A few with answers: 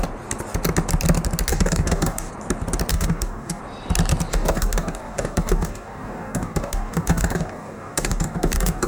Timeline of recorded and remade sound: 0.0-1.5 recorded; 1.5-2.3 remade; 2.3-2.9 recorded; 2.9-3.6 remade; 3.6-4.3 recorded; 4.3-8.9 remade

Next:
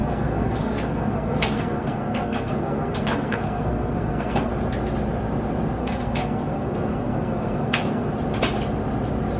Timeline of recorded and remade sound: 0.0-4.5 remade; 4.5-5.8 recorded; 5.8-8.1 remade; 8.1-9.4 recorded

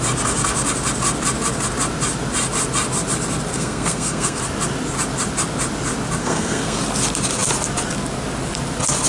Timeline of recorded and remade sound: 0.0-3.5 recorded; 3.5-4.4 remade; 4.4-6.2 recorded; 6.2-6.8 remade; 6.8-9.1 recorded

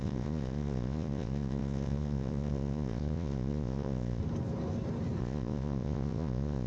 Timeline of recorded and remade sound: 0.0-4.2 remade; 4.2-5.2 recorded; 5.2-6.7 remade

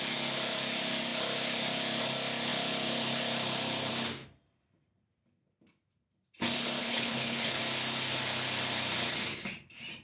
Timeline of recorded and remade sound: 0.0-6.8 recorded; 6.8-7.6 remade; 7.6-10.0 recorded